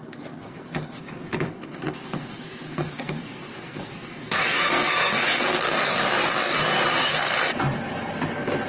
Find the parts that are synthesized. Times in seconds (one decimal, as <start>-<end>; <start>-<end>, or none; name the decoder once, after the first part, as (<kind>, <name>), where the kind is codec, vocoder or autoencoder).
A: 0.0-5.9 (codec, SNAC); 7.0-7.4